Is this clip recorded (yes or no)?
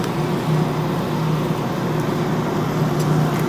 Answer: yes